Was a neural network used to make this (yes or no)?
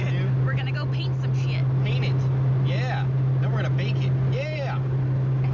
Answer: no